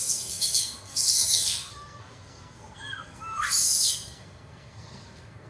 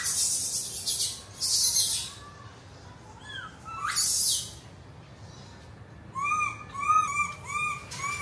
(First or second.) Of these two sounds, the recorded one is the second